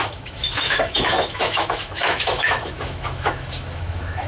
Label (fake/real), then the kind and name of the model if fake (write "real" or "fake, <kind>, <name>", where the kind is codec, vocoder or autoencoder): fake, autoencoder, DAC-VAE